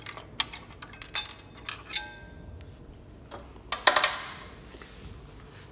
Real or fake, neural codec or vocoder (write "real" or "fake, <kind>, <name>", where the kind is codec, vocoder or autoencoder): real